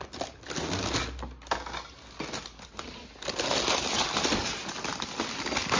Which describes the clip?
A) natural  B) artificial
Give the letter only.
A